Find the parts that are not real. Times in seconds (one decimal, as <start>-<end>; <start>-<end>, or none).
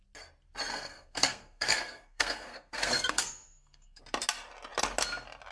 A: 0.7-4.0